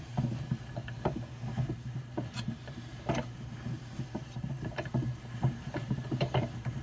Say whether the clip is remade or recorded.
remade